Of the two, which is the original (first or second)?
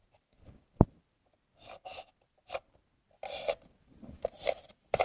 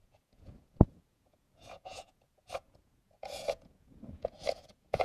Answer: first